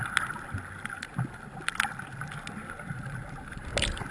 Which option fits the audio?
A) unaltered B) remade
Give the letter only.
A